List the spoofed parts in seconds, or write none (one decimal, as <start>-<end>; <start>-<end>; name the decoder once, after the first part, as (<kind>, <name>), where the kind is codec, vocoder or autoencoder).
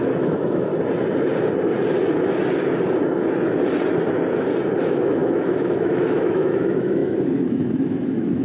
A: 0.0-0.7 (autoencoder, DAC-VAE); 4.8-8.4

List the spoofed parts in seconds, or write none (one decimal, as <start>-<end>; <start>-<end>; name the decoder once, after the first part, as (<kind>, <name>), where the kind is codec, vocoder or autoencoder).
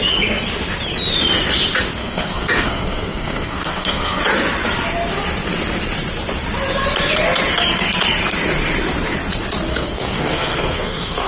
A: 2.0-4.2 (codec, SNAC); 9.7-11.3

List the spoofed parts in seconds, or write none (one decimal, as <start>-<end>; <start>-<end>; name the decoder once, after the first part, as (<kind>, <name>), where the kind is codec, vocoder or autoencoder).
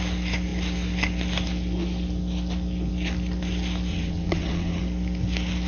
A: 3.9-4.8 (vocoder, WaveNeXt)